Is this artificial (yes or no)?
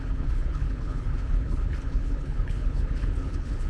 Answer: yes